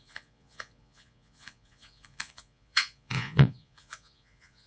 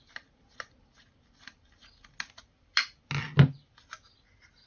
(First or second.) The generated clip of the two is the first